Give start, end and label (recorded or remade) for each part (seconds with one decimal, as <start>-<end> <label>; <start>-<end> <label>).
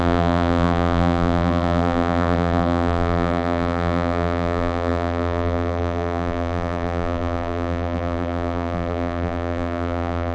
0.0-10.3 remade